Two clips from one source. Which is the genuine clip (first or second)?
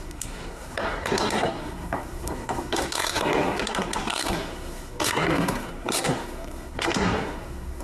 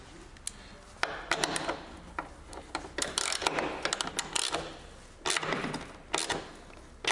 second